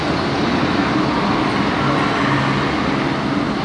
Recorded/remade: recorded